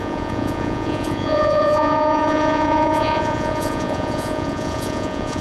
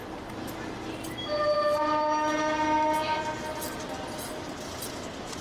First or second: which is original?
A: second